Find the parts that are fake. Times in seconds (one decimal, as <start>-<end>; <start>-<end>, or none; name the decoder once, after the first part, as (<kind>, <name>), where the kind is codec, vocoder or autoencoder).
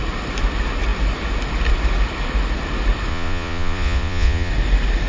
3.1-4.5 (vocoder, Vocos)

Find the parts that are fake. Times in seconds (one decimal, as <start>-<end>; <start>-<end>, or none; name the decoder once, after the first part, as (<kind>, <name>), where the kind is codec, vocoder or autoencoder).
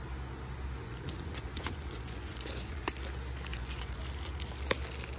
0.8-2.9 (vocoder, Vocos); 3.5-4.0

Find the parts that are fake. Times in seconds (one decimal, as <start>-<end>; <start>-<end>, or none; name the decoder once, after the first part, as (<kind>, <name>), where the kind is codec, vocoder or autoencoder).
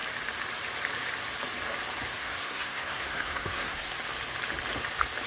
2.2-3.9 (codec, SNAC)